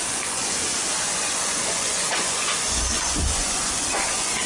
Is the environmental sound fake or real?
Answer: fake